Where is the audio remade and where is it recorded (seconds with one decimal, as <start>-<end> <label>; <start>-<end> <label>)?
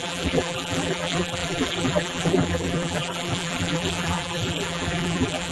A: 0.0-5.5 remade